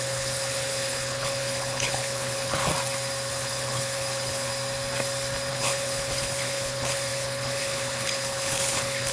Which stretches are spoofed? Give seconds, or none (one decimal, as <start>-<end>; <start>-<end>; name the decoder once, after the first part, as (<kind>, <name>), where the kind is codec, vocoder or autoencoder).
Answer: 0.0-2.7 (codec, HILCodec); 3.3-4.5; 5.5-9.1